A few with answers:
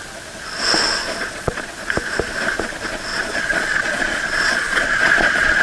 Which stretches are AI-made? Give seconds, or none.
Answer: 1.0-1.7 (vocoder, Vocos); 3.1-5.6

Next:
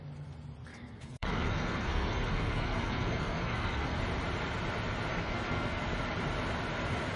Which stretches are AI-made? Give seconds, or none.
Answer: 0.7-4.0 (codec, SNAC); 5.1-5.8

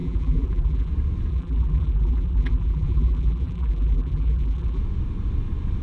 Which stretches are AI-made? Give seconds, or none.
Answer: 0.0-0.9 (vocoder, BigVGAN v2); 1.3-4.8

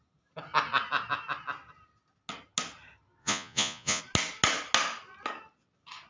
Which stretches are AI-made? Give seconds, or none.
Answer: 3.2-4.0 (vocoder, Vocos)

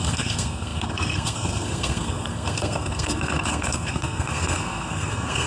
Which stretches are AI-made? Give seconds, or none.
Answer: 0.0-5.5 (codec, SNAC)